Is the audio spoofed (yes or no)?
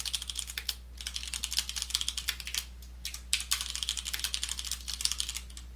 no